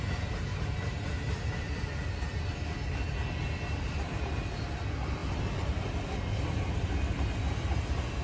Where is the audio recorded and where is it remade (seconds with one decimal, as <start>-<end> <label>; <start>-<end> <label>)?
0.0-8.2 recorded